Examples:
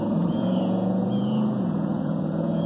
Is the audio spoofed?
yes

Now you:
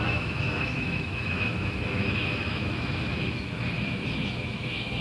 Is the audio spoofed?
yes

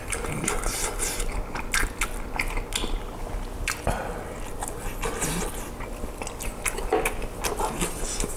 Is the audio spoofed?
no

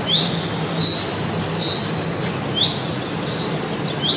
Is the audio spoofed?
no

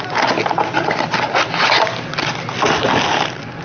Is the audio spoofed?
no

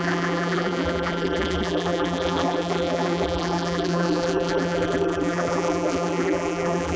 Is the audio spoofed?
yes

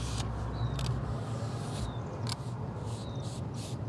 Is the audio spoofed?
no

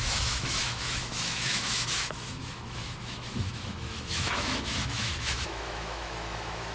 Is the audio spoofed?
yes